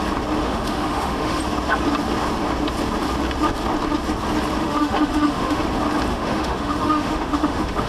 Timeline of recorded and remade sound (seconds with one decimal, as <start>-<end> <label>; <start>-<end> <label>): 0.0-0.4 recorded; 0.4-1.4 remade; 1.4-4.6 recorded; 4.6-5.6 remade; 5.6-6.1 recorded; 6.1-7.9 remade